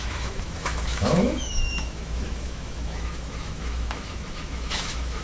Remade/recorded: remade